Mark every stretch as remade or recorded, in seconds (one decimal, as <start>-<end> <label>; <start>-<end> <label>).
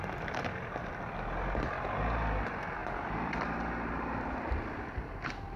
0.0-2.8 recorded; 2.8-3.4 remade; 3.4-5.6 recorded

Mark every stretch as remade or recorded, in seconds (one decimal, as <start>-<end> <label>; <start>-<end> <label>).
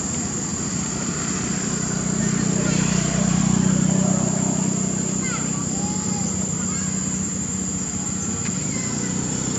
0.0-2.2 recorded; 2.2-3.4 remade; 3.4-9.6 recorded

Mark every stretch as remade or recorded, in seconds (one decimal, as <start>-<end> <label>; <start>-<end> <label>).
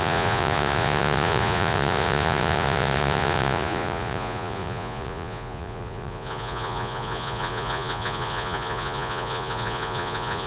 0.0-10.5 remade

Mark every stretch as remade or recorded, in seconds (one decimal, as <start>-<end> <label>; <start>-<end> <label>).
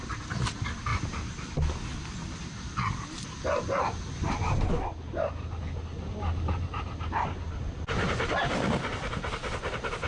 0.0-5.9 recorded; 5.9-9.0 remade; 9.0-10.1 recorded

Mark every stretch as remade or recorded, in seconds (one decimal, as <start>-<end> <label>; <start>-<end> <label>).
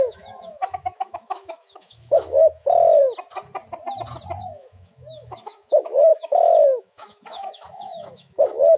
0.0-3.0 remade; 3.0-4.4 recorded; 4.4-8.8 remade